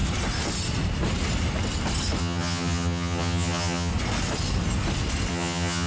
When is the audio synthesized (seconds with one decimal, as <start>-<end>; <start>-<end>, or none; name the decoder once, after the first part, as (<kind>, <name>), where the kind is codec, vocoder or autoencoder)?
2.2-3.9 (vocoder, HiFi-GAN); 5.3-5.9